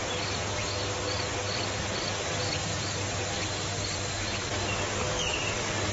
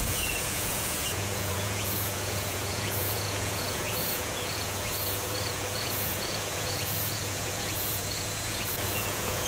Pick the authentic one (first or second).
first